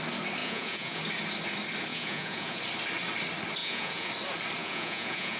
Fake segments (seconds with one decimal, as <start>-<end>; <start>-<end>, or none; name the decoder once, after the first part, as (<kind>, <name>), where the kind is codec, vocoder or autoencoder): 0.4-1.0 (vocoder, Vocos); 1.9-2.6; 3.6-4.1; 4.6-5.4